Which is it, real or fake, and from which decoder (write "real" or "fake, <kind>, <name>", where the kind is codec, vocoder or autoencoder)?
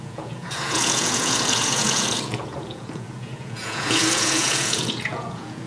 fake, vocoder, Vocos